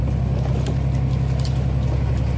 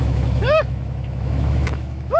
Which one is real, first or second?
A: first